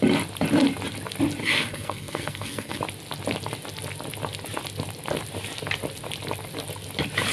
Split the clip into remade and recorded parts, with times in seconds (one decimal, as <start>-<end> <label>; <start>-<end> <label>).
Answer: 0.0-1.4 recorded; 1.4-2.8 remade; 2.8-7.3 recorded